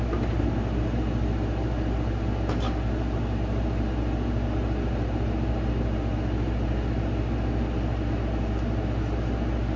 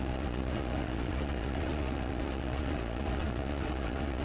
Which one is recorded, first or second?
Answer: first